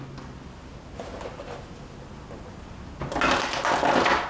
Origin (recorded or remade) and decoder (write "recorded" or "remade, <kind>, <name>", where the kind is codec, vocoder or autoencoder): recorded